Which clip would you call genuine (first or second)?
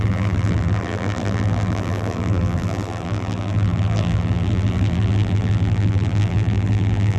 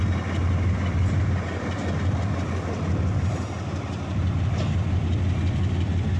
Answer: second